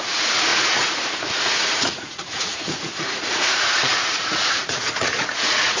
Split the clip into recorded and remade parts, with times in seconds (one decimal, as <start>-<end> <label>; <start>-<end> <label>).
0.0-5.8 remade